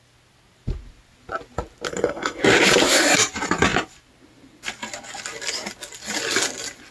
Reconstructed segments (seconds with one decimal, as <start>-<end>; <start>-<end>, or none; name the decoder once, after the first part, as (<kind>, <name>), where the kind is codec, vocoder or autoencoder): 1.9-2.4 (codec, SNAC)